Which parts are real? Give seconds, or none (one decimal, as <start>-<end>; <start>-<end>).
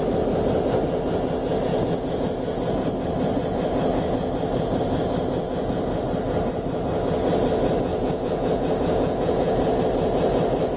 0.0-1.7; 2.2-7.9; 9.8-10.8